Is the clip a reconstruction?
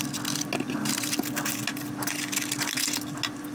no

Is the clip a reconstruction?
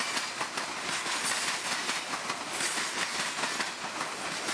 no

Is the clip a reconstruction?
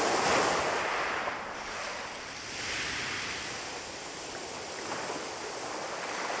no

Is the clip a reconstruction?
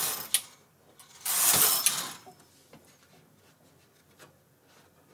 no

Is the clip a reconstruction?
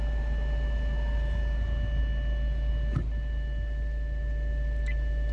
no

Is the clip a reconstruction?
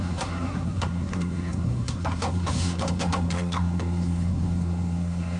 yes